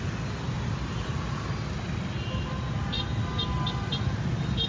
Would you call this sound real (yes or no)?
yes